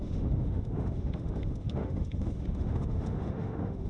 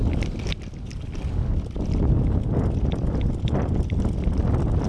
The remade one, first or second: first